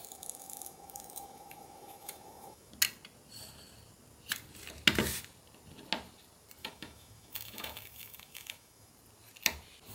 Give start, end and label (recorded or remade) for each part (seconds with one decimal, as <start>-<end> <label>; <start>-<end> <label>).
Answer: 0.0-2.7 remade; 2.7-6.6 recorded; 6.6-8.9 remade; 8.9-9.9 recorded